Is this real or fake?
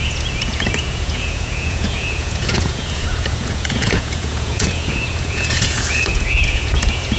fake